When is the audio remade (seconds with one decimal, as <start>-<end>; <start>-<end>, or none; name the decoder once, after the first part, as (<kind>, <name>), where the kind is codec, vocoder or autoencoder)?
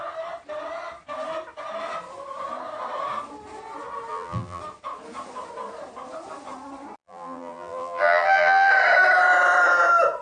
4.1-4.6 (vocoder, BigVGAN v2); 7.0-8.7